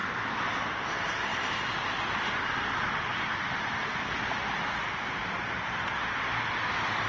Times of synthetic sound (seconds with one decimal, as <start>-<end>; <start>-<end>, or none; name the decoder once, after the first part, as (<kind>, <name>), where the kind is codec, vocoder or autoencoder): 1.3-2.8 (vocoder, BigVGAN v2); 5.2-5.9